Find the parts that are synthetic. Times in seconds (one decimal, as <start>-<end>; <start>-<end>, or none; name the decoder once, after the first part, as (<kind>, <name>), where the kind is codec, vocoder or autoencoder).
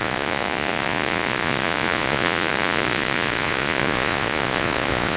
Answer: 0.0-5.2 (vocoder, Vocos)